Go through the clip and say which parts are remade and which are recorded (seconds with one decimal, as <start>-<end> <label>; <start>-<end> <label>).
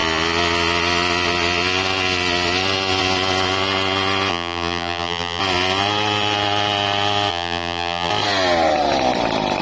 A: 0.0-4.3 recorded; 4.3-5.4 remade; 5.4-7.3 recorded; 7.3-8.1 remade; 8.1-9.6 recorded